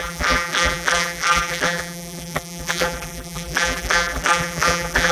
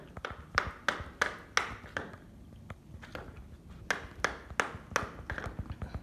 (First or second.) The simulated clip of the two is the first